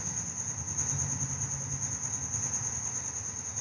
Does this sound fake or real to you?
real